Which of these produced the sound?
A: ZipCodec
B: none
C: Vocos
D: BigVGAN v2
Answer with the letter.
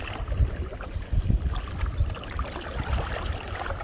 B